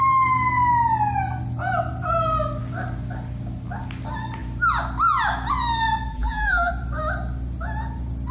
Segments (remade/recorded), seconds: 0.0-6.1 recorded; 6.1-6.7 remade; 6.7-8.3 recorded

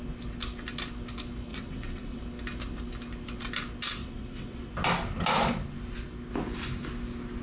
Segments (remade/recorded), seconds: 0.0-1.5 recorded; 1.5-2.2 remade; 2.2-4.0 recorded; 4.0-4.7 remade; 4.7-7.4 recorded

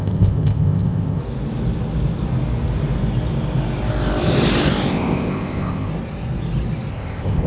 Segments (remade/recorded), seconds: 0.0-1.2 remade; 1.2-4.9 recorded; 4.9-5.9 remade; 5.9-6.9 recorded; 6.9-7.5 remade

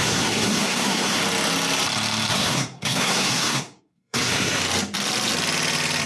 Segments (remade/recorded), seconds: 0.0-1.2 remade; 1.2-2.3 recorded; 2.3-4.6 remade; 4.6-6.1 recorded

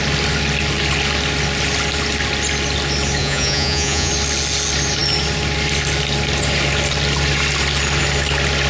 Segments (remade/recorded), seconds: 0.0-3.2 recorded; 3.2-4.1 remade; 4.1-8.7 recorded

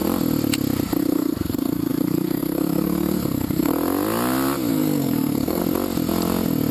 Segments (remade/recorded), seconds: 0.0-1.0 recorded; 1.0-3.7 remade; 3.7-4.7 recorded; 4.7-5.6 remade; 5.6-6.7 recorded